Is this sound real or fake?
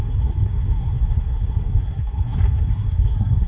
fake